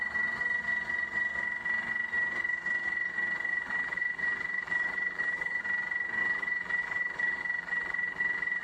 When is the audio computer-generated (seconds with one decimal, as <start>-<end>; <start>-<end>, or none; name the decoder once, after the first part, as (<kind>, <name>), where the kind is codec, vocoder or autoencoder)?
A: 3.5-5.6 (vocoder, BigVGAN v2); 6.2-8.6

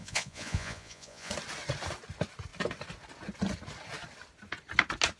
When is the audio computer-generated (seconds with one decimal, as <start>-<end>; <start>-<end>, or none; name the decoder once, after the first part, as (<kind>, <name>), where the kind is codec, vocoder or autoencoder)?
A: 0.0-1.3 (vocoder, Vocos)

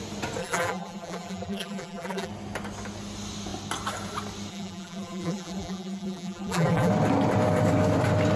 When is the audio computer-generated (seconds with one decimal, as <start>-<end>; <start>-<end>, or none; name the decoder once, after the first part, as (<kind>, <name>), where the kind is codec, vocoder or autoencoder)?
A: 0.4-2.3 (vocoder, BigVGAN v2); 4.5-6.9

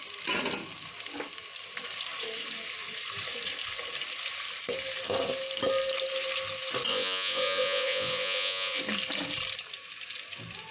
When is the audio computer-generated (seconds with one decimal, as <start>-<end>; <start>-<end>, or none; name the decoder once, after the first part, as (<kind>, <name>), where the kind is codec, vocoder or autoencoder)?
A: 6.9-8.8 (vocoder, Vocos)

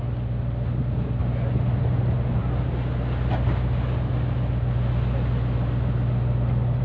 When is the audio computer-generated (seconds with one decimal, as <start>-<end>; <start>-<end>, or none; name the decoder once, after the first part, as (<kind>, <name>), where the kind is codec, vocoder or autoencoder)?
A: none

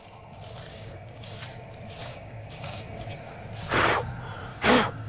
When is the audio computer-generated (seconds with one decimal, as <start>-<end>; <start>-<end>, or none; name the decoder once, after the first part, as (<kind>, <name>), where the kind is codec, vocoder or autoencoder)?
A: 0.7-1.4 (codec, DAC); 2.0-3.2; 4.5-5.1

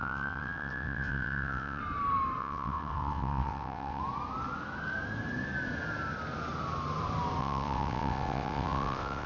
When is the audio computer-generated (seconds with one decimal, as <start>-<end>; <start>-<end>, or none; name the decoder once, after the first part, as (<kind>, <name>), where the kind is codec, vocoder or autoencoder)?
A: 0.0-1.8 (vocoder, WaveNeXt); 2.4-4.0; 7.4-9.3